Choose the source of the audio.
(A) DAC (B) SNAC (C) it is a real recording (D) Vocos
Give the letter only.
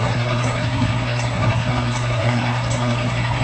B